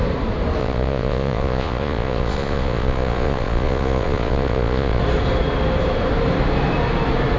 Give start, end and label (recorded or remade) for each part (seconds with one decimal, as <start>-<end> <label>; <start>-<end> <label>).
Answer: 0.0-0.6 recorded; 0.6-5.0 remade; 5.0-7.4 recorded